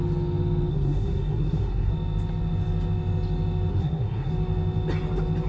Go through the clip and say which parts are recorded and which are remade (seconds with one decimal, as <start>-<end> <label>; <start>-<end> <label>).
0.0-0.7 recorded; 0.7-1.9 remade; 1.9-3.7 recorded; 3.7-4.3 remade; 4.3-5.5 recorded